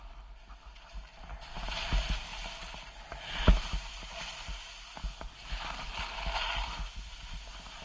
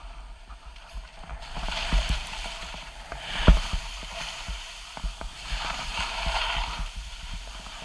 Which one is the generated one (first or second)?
second